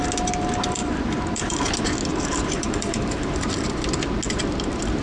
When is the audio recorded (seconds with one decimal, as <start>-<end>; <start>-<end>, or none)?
0.0-0.8; 1.6-2.1; 3.5-5.0